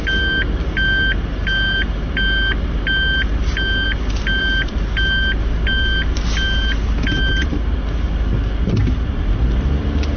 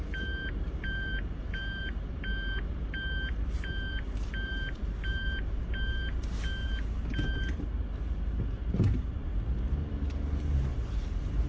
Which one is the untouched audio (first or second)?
first